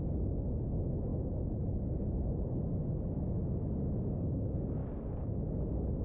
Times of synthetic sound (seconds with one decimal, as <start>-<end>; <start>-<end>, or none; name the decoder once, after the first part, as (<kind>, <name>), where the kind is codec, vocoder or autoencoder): none